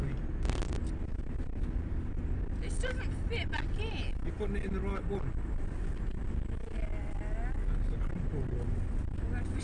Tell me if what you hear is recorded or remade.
recorded